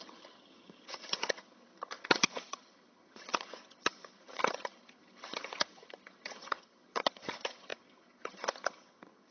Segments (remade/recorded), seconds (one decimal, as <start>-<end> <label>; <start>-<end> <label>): 0.0-9.3 remade